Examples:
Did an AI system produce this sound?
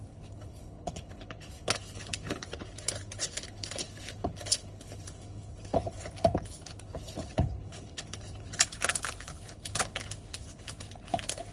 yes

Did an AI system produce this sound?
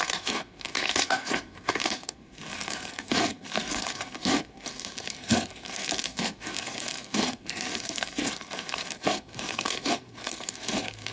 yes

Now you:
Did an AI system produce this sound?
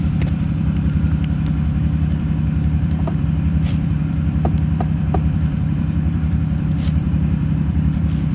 yes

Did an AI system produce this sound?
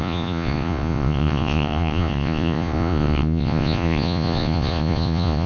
yes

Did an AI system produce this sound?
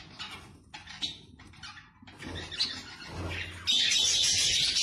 no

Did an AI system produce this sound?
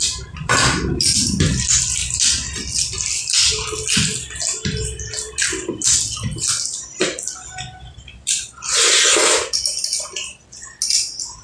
no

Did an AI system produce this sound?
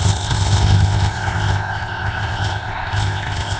yes